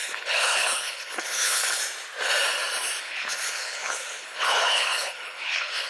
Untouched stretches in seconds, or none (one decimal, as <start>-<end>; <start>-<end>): 1.8-3.0